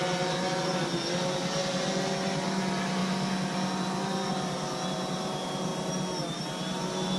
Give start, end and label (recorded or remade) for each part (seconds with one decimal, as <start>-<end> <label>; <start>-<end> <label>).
0.0-7.2 recorded